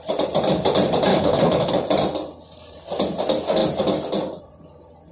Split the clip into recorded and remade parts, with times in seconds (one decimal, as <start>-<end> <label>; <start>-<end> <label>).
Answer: 0.0-1.1 recorded; 1.1-1.7 remade; 1.7-5.1 recorded